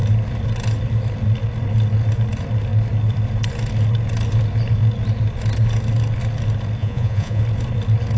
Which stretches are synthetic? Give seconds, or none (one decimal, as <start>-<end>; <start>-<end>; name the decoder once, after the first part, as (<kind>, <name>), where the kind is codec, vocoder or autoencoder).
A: 6.8-7.4 (vocoder, Vocos)